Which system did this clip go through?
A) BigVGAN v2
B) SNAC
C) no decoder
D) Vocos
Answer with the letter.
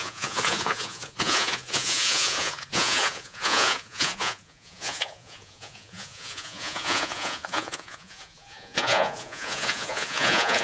D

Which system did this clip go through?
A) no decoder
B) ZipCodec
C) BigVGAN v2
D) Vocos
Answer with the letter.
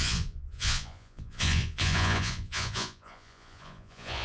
D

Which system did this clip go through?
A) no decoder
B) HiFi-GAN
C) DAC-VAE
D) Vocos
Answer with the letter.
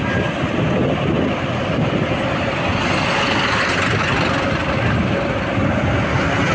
A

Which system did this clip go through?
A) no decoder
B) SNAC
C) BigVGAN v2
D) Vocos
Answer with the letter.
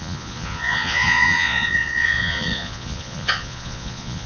D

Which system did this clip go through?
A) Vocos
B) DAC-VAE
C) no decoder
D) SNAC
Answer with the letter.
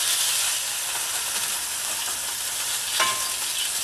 C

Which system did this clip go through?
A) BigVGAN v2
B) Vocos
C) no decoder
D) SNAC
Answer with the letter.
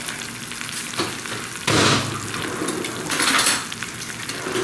C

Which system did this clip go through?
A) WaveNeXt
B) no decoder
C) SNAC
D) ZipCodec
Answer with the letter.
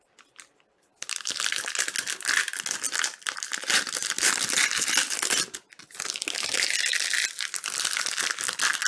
B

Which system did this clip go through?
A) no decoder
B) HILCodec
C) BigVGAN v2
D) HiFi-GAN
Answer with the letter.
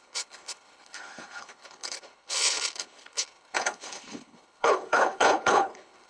B